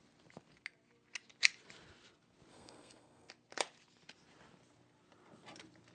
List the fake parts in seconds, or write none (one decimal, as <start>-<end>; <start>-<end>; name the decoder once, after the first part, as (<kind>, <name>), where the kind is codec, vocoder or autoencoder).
2.5-3.3 (codec, SNAC)